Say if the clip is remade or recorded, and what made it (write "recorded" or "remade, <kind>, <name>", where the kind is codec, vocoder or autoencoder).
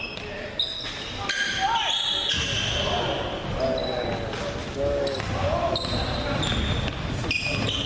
recorded